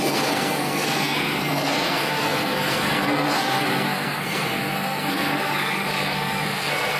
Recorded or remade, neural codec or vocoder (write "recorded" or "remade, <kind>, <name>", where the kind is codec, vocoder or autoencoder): remade, codec, SNAC